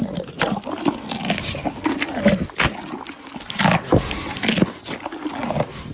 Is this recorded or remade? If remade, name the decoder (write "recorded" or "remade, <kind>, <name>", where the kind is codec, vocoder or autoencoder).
recorded